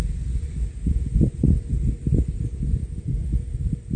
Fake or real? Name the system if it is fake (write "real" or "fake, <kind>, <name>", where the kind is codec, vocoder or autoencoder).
real